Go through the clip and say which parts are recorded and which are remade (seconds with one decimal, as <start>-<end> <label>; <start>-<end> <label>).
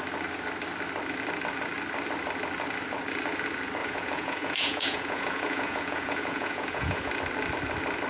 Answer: 0.0-3.8 recorded; 3.8-7.1 remade; 7.1-8.1 recorded